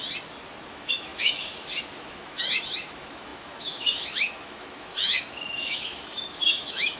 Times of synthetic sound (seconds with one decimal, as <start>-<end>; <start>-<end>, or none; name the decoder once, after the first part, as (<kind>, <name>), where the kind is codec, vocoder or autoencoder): 0.7-7.0 (autoencoder, DAC-VAE)